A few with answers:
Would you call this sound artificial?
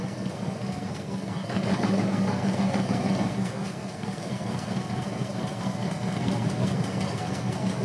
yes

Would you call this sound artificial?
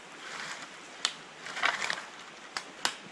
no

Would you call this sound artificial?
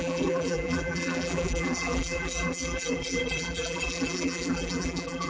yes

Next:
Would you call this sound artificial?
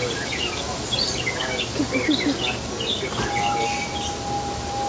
no